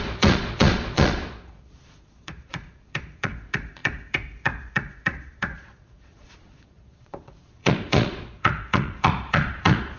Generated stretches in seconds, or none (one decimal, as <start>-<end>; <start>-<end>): 0.0-10.0